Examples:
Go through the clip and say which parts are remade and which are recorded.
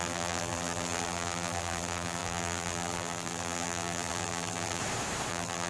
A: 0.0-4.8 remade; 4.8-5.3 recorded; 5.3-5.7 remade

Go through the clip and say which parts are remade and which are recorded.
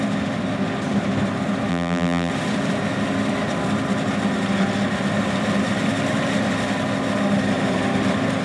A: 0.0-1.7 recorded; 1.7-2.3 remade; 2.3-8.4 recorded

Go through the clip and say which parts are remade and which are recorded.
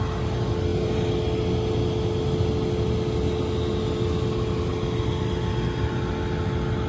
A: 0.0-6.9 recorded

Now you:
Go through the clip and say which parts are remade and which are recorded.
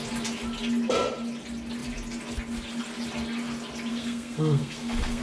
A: 0.0-3.9 recorded; 3.9-5.2 remade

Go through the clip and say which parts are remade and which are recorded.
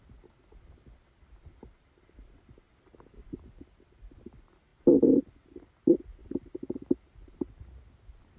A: 0.0-8.4 recorded